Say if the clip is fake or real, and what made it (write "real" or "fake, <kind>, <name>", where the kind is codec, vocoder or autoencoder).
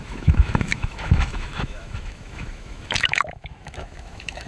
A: fake, autoencoder, DAC-VAE